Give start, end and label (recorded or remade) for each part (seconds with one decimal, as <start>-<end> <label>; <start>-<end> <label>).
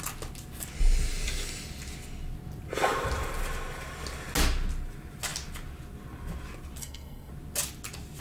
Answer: 0.0-6.8 recorded; 6.8-7.3 remade; 7.3-8.2 recorded